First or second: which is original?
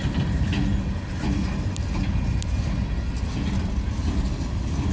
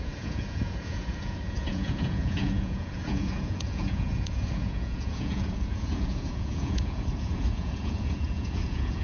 first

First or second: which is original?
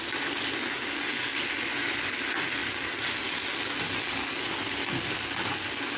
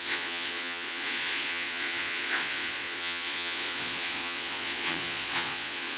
first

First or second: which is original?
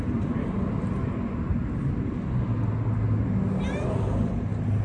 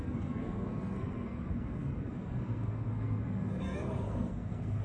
first